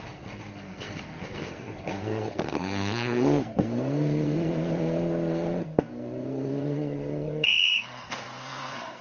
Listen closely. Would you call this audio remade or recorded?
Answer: remade